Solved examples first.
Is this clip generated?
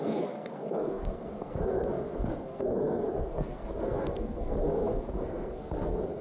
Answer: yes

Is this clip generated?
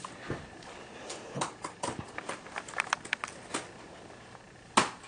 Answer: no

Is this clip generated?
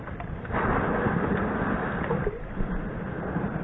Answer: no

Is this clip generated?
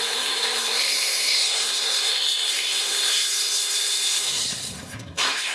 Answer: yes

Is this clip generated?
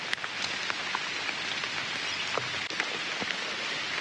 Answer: no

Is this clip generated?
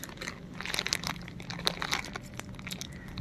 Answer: no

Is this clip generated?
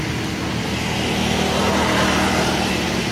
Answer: no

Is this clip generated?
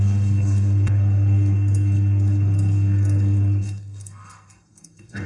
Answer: yes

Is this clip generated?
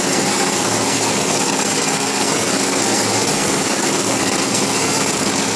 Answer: yes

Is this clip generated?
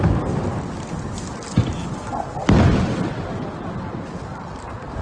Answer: no